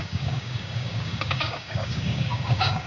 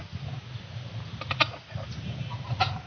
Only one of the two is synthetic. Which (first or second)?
first